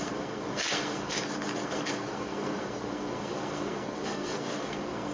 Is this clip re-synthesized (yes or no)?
yes